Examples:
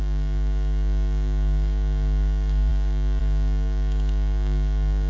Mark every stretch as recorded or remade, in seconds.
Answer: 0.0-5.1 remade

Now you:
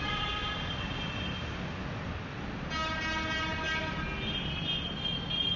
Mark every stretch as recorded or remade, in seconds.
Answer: 0.0-5.6 recorded